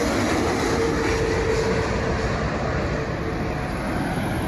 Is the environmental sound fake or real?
real